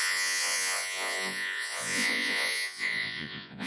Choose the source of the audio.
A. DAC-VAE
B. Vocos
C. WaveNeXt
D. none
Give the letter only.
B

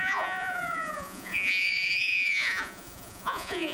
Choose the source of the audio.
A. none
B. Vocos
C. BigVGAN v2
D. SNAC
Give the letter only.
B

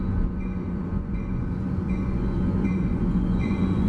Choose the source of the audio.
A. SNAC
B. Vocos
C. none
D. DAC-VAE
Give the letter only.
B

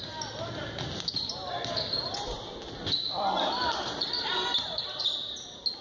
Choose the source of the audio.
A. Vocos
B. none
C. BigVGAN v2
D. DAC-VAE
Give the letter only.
B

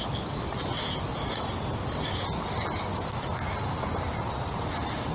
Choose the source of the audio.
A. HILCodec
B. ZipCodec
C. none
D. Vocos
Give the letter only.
C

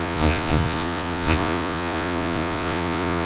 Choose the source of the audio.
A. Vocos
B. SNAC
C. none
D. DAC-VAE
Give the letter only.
A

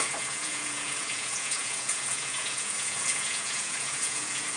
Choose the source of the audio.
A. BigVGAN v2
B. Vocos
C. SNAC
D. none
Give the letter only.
B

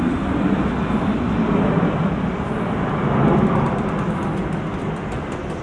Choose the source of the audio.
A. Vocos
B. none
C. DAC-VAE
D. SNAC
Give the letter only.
B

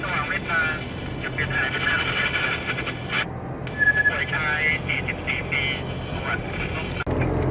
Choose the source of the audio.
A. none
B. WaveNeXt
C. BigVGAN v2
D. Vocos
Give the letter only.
A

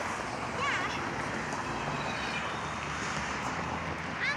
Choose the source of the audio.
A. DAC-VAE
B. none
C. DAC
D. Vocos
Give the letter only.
B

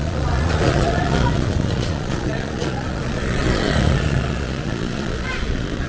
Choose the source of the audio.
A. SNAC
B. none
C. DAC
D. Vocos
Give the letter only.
D